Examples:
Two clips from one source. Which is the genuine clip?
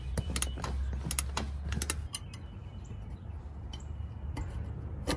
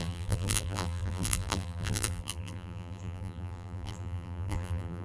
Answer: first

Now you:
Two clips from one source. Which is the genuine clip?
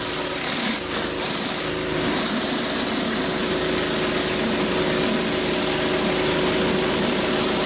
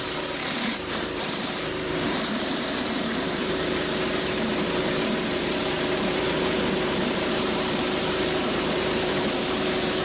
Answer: first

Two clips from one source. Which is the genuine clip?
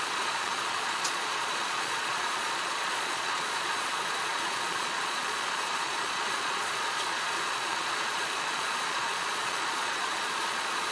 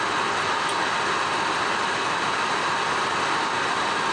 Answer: second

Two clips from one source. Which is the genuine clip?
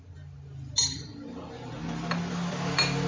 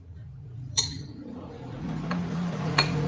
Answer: first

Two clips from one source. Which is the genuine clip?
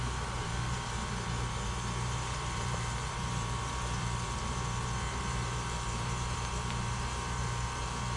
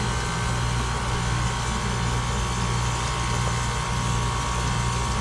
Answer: second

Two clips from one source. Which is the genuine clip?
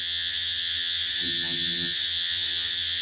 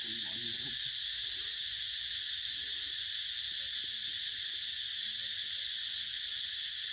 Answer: second